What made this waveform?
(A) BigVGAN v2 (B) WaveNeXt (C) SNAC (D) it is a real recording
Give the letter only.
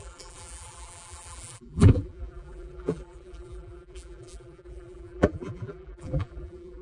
A